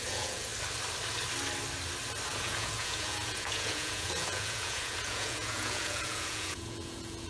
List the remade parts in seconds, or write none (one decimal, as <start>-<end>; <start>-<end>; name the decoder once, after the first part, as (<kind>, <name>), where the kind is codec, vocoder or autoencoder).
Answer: 0.0-0.5 (vocoder, Vocos); 2.3-7.3